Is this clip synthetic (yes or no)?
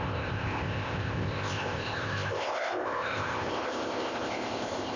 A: yes